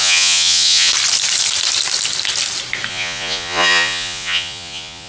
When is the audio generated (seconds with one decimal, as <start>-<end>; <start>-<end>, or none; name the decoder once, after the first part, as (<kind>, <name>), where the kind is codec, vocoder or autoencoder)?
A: 0.0-0.9 (vocoder, Vocos); 2.9-5.1